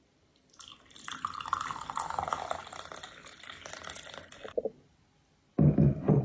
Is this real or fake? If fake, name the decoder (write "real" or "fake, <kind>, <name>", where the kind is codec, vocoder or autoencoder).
real